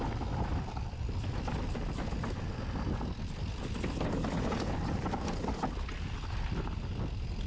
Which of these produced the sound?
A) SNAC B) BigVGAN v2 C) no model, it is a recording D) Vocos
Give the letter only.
C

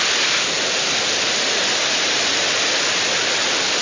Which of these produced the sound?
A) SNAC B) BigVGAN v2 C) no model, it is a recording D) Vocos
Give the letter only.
C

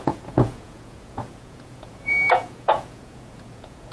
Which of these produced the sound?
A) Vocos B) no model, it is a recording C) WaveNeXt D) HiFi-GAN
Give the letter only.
A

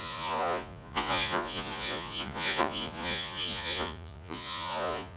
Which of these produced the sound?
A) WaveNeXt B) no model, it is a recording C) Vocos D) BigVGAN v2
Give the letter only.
C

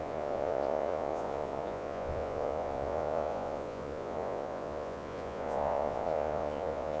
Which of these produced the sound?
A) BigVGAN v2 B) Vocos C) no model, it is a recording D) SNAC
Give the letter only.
B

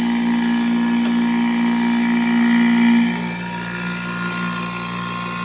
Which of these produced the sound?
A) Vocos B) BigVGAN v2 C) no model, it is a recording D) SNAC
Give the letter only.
C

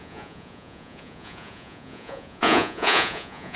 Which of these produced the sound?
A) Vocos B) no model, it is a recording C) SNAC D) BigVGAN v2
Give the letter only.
A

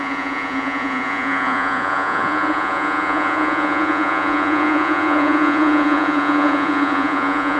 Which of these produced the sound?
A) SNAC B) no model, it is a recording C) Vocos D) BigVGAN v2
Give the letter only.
C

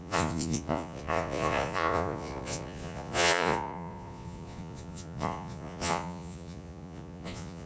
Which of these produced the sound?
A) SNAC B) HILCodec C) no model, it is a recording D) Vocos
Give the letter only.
D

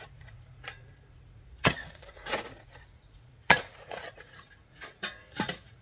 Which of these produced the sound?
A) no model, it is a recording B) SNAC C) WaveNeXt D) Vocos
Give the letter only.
D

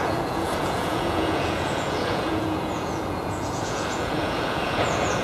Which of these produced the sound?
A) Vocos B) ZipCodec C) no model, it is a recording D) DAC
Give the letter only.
A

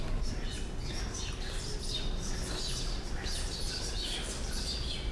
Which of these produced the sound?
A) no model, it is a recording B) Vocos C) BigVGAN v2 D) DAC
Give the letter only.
A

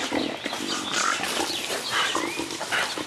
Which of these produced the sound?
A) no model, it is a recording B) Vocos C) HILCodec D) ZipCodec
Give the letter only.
A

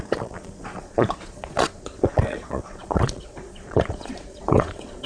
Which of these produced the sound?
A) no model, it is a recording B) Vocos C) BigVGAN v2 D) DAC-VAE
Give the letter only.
B